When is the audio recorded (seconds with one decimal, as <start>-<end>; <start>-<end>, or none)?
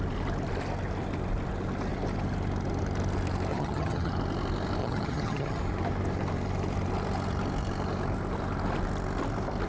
0.0-3.5; 4.1-4.8; 5.6-9.7